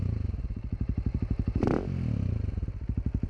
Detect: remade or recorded remade